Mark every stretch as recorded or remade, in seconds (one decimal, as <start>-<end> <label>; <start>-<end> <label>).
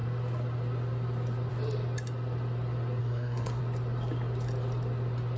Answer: 0.0-3.0 recorded; 3.0-3.6 remade; 3.6-5.4 recorded